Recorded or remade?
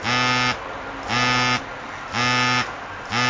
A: recorded